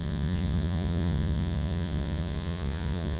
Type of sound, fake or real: fake